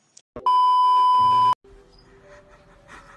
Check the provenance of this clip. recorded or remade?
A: recorded